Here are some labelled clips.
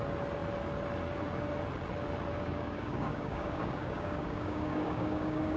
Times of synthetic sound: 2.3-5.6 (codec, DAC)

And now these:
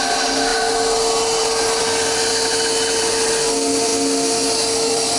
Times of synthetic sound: none

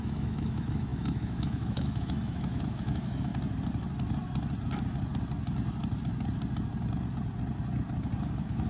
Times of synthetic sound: 0.0-3.3 (autoencoder, DAC-VAE); 8.2-8.7

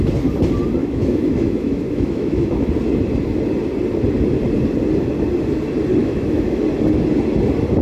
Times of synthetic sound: 0.8-2.7 (autoencoder, DAC-VAE); 6.0-6.6

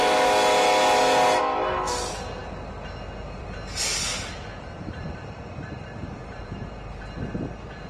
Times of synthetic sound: 4.5-7.9 (vocoder, BigVGAN v2)

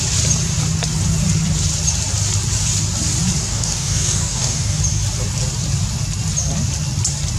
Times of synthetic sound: 3.4-4.8 (codec, DAC)

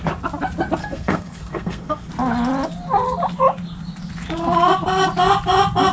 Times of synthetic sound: 0.8-2.1 (codec, SNAC)

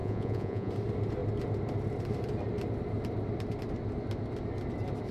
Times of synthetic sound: 0.0-0.7 (vocoder, Vocos)